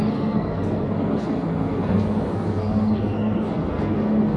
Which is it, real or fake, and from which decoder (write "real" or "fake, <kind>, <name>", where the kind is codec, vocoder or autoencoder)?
fake, codec, SNAC